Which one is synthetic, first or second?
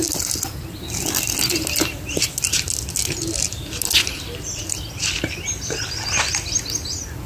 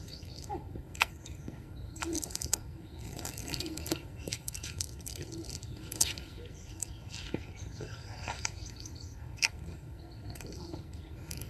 second